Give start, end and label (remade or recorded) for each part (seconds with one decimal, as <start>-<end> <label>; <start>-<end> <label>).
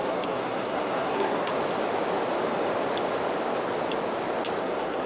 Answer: 0.0-1.5 remade; 1.5-4.6 recorded; 4.6-5.1 remade